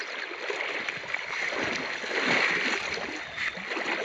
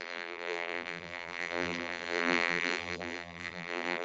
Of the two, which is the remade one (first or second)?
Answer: second